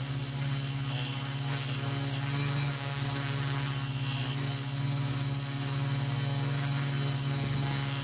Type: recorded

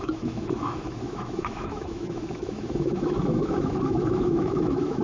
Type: remade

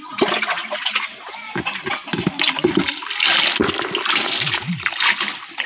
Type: recorded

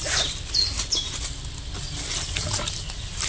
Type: recorded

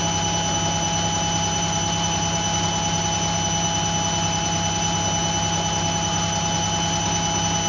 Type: recorded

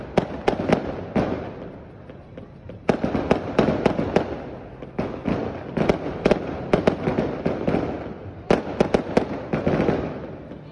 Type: recorded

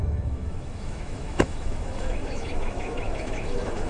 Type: remade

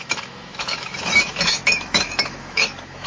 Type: remade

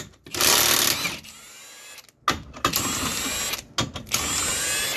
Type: recorded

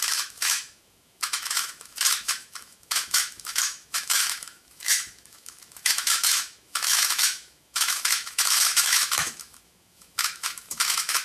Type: remade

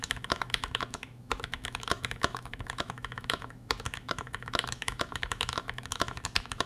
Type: remade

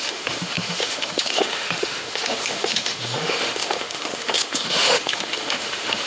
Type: remade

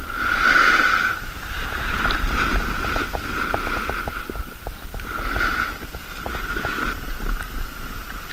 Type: recorded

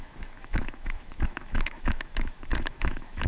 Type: remade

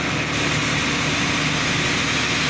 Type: recorded